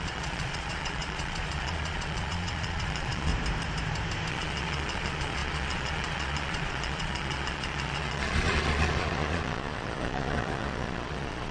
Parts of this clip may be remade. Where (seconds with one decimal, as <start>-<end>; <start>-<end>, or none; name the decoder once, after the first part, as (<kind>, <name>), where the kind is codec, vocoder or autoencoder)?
0.0-3.3 (vocoder, Vocos); 4.3-11.5